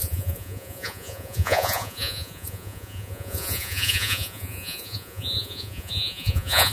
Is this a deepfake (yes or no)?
yes